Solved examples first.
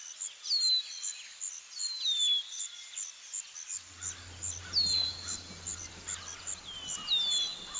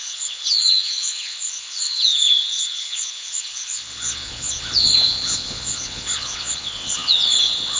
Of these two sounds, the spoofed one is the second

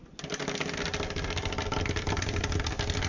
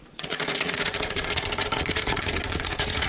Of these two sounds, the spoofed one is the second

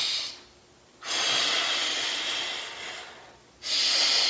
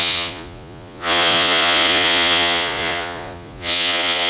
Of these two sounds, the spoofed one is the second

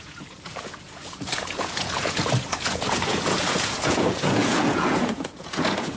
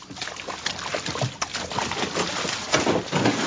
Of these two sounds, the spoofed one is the first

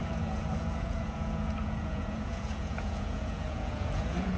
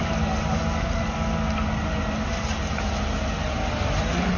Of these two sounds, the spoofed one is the first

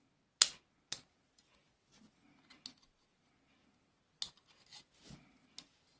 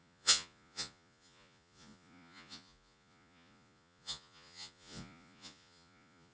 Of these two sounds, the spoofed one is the second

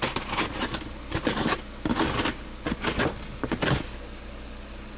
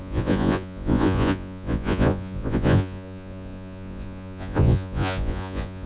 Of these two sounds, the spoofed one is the second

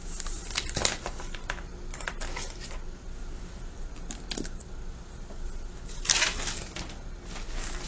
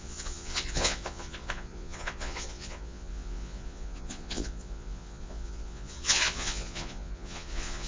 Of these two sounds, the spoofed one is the second